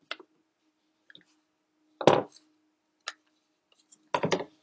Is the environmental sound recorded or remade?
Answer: recorded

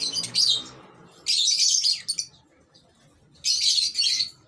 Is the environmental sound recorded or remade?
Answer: recorded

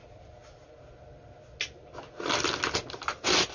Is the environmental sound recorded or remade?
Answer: recorded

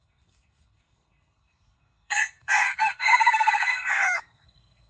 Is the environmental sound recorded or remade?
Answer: remade